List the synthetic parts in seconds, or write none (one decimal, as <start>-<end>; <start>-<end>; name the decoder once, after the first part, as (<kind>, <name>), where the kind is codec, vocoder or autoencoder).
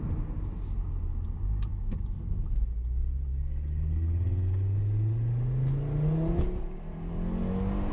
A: none